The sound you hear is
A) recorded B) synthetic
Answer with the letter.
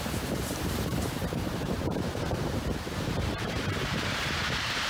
B